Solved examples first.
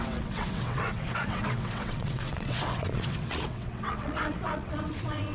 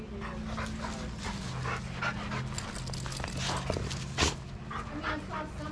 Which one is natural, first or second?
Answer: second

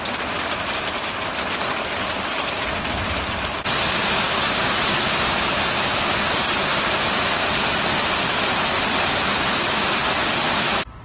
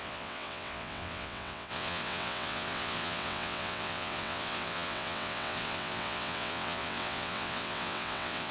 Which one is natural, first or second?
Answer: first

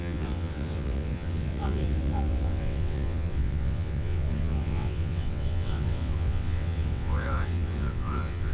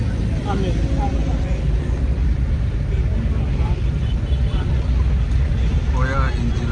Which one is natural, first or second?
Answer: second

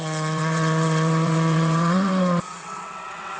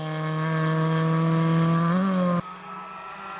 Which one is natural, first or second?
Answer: second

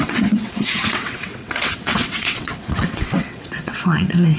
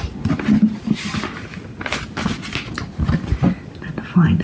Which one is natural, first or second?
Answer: second